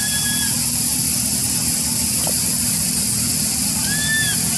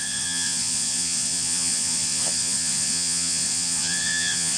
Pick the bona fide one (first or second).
first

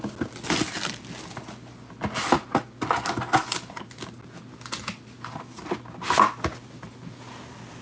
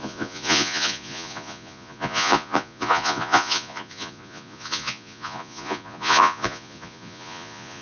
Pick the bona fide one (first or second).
first